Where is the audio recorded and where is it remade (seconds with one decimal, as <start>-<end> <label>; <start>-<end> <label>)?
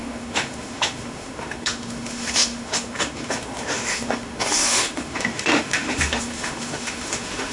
0.0-7.5 remade